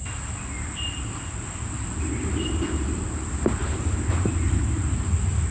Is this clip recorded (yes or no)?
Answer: yes